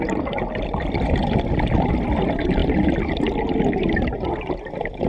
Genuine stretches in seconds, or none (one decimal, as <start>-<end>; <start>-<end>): 0.0-5.1